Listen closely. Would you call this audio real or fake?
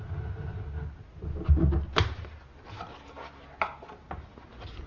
real